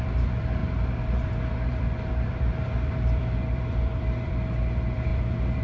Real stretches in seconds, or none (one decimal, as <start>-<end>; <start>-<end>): none